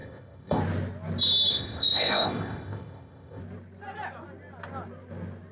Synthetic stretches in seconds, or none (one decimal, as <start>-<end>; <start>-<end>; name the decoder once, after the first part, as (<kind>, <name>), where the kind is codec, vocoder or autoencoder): 0.0-0.6 (codec, ZipCodec); 1.5-3.4